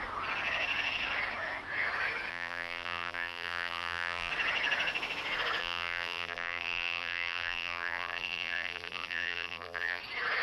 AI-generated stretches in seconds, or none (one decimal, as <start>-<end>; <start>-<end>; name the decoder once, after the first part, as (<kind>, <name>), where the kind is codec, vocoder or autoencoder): 2.3-4.3 (vocoder, BigVGAN v2); 5.6-10.0